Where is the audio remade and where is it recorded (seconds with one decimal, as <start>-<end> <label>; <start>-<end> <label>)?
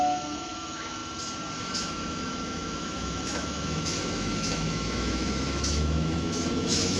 0.0-1.0 remade; 1.0-1.6 recorded; 1.6-7.0 remade